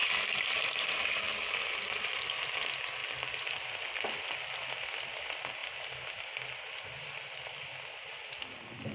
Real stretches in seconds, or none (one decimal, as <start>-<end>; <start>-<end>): 1.5-3.0; 4.2-8.9